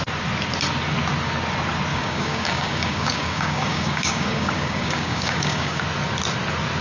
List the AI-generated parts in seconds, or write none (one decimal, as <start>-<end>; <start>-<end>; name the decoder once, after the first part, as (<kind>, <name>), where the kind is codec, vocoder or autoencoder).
1.9-5.8 (codec, DAC)